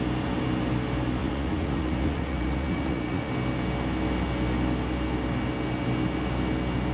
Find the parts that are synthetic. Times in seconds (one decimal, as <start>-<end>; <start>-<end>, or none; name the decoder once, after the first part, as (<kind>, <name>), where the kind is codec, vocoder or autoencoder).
1.2-3.3 (vocoder, Vocos)